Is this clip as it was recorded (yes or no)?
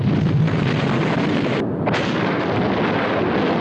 yes